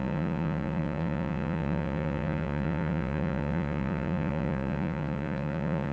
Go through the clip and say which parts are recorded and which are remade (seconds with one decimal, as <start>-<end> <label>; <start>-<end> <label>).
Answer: 0.0-5.9 remade